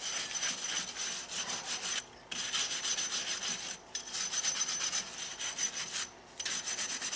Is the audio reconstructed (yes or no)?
no